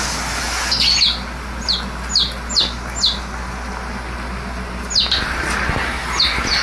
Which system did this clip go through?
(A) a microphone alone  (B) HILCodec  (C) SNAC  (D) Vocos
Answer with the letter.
A